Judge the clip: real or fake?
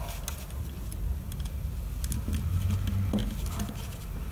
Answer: real